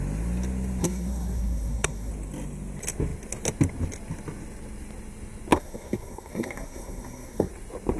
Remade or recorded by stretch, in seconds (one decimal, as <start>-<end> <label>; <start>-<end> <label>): 0.0-0.8 recorded; 0.8-2.1 remade; 2.1-5.5 recorded; 5.5-7.5 remade; 7.5-8.0 recorded